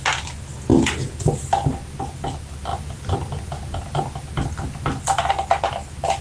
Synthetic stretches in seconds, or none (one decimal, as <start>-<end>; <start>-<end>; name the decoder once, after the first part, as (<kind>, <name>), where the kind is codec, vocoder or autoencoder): none